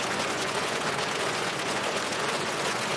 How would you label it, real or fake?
fake